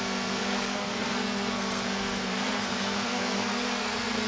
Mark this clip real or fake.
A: fake